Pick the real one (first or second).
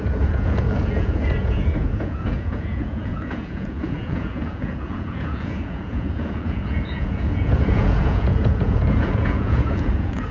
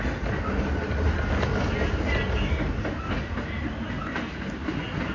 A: second